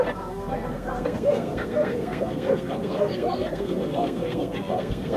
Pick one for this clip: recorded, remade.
remade